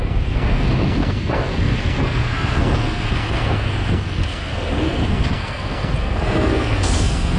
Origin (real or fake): fake